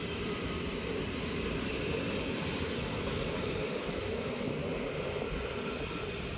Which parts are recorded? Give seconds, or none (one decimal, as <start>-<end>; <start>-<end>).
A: 0.0-3.8; 4.6-6.4